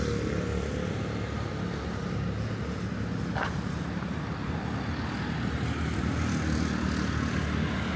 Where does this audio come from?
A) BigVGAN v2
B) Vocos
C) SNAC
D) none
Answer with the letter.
D